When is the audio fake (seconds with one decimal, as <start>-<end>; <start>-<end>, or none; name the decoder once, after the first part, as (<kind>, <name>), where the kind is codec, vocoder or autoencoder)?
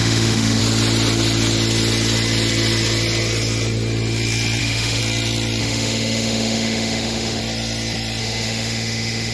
0.0-0.6 (autoencoder, DAC-VAE); 4.6-5.0; 5.6-7.4; 8.2-9.3